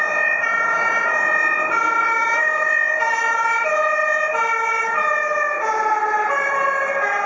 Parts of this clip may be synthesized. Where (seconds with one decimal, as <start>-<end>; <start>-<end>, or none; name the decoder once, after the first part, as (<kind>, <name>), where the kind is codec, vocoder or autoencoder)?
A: 2.1-2.7 (codec, DAC)